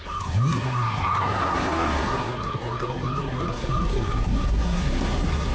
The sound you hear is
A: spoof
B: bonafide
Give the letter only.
A